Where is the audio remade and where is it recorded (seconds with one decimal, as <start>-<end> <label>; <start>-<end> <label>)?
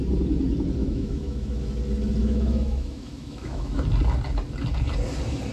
0.0-0.8 recorded; 0.8-1.6 remade; 1.6-2.2 recorded; 2.2-3.8 remade; 3.8-5.5 recorded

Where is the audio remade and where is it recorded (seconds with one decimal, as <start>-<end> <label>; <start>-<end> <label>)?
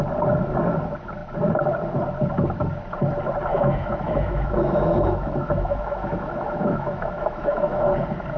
0.0-3.5 recorded; 3.5-7.9 remade; 7.9-8.4 recorded